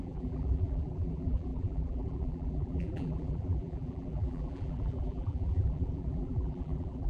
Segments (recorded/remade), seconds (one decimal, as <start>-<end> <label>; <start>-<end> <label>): 0.0-7.1 remade